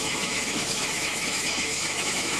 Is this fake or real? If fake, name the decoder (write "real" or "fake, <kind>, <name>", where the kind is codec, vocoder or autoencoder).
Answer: fake, autoencoder, DAC-VAE